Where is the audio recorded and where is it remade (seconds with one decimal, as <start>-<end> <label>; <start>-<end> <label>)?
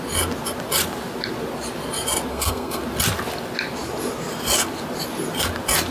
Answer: 0.0-2.3 recorded; 2.3-2.8 remade; 2.8-5.9 recorded